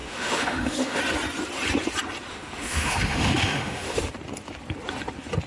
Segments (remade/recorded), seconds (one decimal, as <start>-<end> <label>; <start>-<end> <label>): 0.0-1.0 remade; 1.0-2.3 recorded; 2.3-4.0 remade; 4.0-5.5 recorded